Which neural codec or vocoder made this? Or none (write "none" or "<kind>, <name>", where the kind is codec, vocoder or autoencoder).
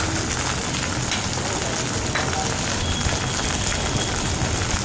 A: none